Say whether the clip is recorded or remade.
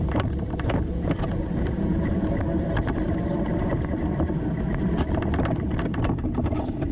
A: remade